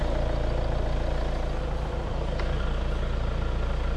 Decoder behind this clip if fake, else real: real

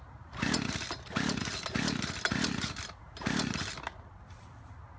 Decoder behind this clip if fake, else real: real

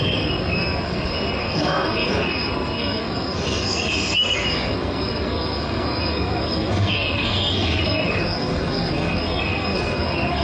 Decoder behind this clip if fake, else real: fake, codec, SNAC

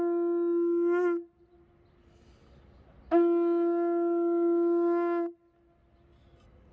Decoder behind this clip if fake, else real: real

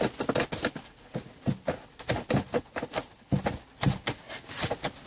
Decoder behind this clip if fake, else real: real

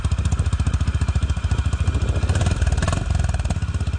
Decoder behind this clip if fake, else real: real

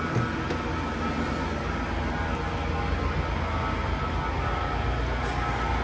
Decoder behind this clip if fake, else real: real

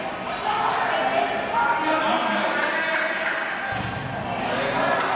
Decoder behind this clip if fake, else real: real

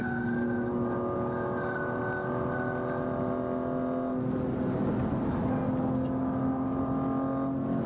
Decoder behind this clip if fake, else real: real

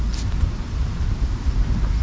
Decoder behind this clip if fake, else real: real